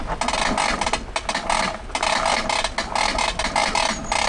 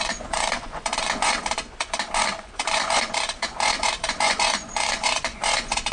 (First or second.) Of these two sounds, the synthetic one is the second